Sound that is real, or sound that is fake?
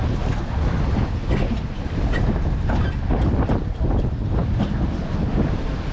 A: real